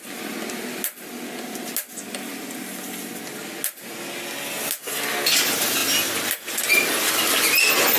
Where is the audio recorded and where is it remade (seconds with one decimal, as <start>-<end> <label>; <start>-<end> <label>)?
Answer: 0.0-8.0 recorded